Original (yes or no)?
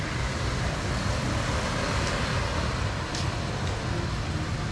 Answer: yes